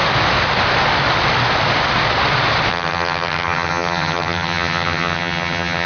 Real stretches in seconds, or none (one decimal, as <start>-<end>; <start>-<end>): 0.0-2.7